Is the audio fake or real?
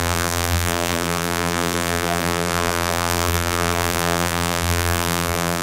fake